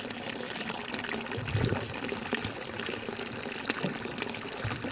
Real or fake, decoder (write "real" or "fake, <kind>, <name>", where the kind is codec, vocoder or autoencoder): real